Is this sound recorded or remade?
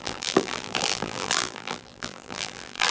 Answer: remade